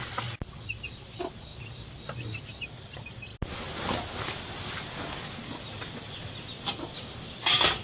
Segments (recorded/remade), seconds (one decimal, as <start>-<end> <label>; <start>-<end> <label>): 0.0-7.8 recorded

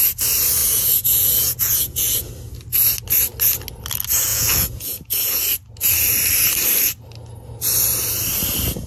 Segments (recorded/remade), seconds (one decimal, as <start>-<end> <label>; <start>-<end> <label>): 0.0-0.6 recorded; 0.6-2.3 remade; 2.3-4.3 recorded; 4.3-5.4 remade; 5.4-8.9 recorded

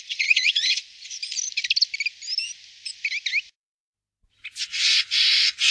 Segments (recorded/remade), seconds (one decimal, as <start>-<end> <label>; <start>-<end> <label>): 0.0-1.2 remade; 1.2-4.6 recorded; 4.6-5.7 remade

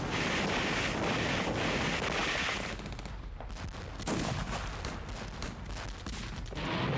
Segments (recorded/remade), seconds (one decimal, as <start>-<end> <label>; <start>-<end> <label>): 0.0-7.0 recorded

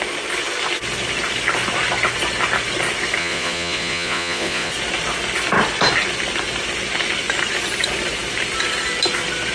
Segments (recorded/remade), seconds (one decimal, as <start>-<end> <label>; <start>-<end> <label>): 0.0-3.2 recorded; 3.2-4.7 remade; 4.7-9.5 recorded

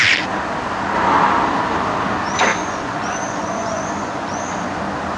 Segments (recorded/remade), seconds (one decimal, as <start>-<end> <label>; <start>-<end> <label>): 0.0-2.5 recorded; 2.5-4.8 remade; 4.8-5.2 recorded